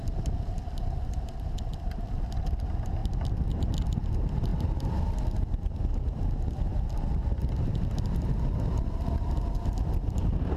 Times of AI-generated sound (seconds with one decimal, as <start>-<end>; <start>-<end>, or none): none